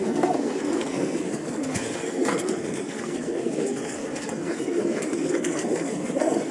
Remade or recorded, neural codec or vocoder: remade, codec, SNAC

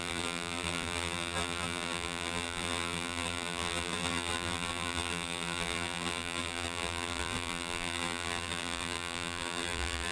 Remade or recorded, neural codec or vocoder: remade, vocoder, BigVGAN v2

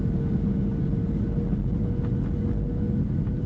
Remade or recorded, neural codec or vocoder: recorded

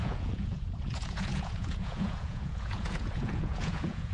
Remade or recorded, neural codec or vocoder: remade, vocoder, Vocos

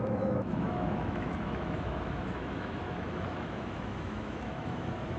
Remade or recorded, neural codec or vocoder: remade, autoencoder, DAC-VAE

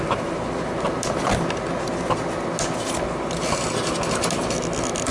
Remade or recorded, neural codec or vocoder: recorded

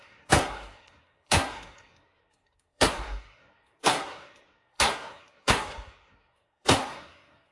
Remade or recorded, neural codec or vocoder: remade, codec, SNAC